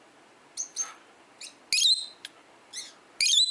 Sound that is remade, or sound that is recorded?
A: recorded